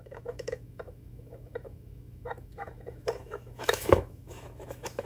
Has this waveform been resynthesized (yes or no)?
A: yes